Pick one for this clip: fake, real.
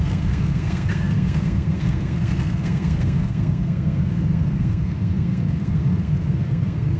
fake